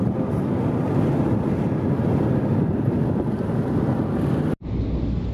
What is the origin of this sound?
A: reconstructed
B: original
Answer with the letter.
B